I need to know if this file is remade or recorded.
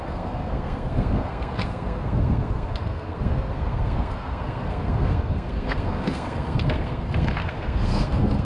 remade